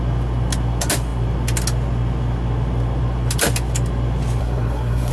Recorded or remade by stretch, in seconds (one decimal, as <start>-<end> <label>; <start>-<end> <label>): 0.0-4.4 recorded; 4.4-5.1 remade